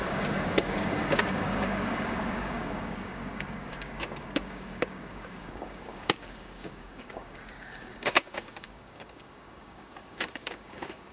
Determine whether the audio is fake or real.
fake